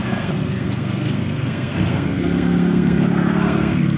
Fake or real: fake